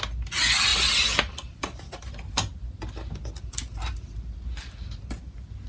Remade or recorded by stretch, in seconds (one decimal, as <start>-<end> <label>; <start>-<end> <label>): 0.0-5.7 recorded